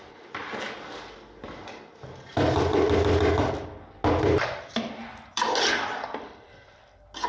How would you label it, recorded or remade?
recorded